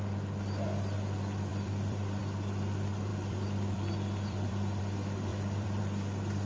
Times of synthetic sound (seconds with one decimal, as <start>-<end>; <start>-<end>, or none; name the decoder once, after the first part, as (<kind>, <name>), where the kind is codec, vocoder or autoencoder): 1.5-2.2 (vocoder, BigVGAN v2); 3.1-4.8; 5.3-5.8